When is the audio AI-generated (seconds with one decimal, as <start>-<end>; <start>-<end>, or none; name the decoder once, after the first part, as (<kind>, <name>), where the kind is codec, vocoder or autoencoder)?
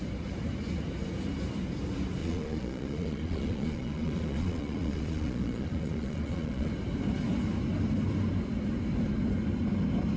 2.2-6.7 (vocoder, Vocos)